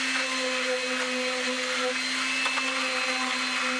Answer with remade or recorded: recorded